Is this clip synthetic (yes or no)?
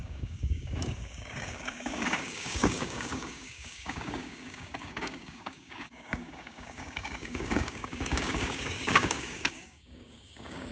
yes